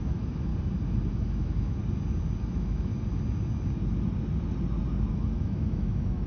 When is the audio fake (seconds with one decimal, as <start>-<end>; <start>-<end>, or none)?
0.0-0.5; 1.1-1.8; 2.4-2.9; 5.1-6.3